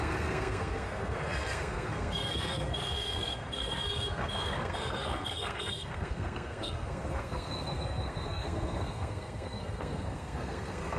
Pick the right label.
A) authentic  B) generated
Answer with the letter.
B